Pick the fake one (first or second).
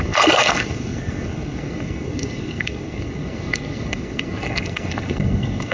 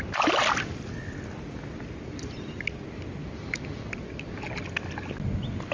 first